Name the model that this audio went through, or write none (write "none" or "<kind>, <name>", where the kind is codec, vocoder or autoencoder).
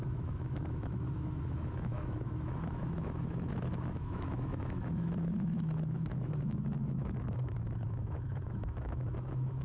autoencoder, DAC-VAE